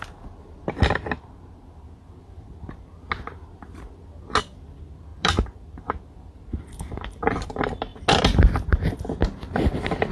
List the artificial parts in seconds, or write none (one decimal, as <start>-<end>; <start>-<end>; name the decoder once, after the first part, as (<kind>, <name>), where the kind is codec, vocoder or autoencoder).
5.1-5.8 (vocoder, BigVGAN v2)